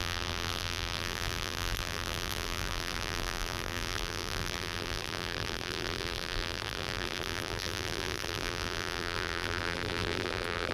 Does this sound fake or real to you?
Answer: fake